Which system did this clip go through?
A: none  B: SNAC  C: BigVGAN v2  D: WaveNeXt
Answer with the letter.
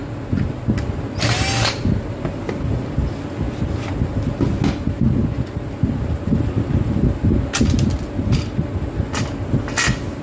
A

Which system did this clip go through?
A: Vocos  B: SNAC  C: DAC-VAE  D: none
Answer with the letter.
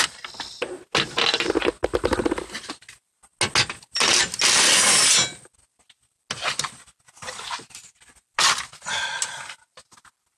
D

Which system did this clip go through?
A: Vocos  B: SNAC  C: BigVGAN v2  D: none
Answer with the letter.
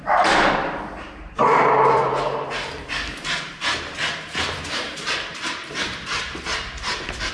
C